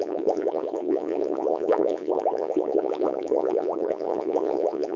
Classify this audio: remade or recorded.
remade